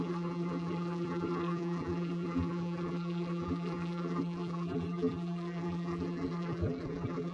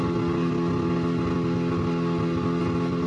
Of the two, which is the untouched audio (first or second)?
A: second